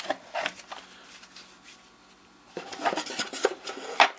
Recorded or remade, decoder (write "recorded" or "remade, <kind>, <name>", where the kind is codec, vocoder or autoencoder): recorded